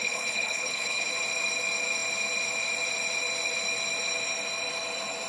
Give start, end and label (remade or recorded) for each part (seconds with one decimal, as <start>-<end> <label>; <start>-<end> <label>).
0.0-1.1 remade; 1.1-5.3 recorded